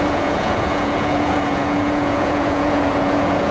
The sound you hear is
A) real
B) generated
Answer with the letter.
B